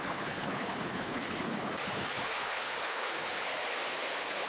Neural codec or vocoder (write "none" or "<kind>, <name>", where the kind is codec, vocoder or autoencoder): codec, HILCodec